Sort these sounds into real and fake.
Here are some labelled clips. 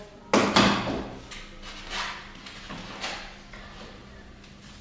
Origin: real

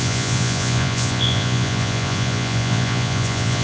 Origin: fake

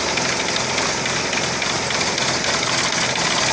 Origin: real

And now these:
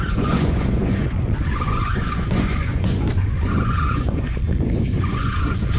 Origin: fake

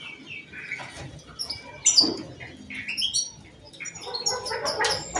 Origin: real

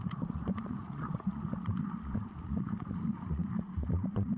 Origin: fake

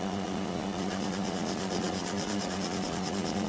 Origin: fake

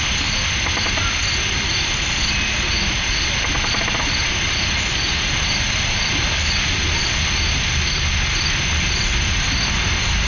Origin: real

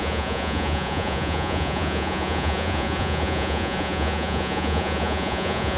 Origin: fake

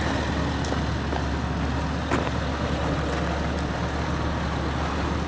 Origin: real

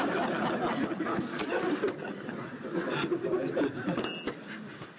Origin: real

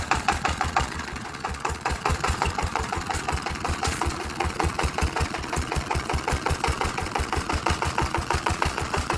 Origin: fake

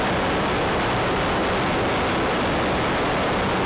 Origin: real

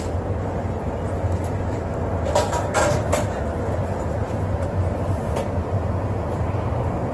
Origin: real